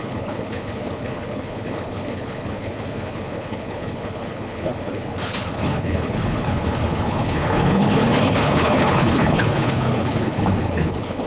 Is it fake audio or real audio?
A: fake